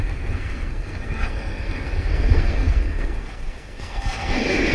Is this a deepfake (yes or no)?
yes